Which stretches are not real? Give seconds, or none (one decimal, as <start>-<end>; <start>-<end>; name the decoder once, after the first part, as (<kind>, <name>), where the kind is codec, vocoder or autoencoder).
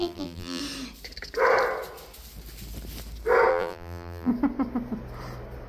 0.0-0.6 (vocoder, BigVGAN v2); 3.5-4.3